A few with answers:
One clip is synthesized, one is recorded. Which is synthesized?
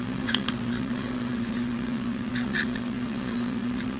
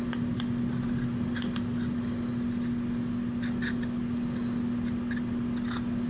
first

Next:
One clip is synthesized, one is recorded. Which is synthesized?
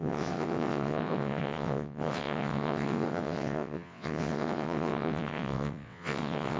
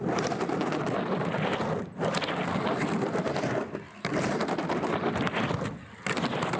first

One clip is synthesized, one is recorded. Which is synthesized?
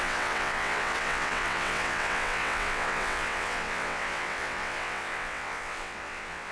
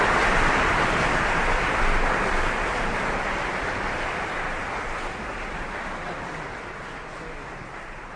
first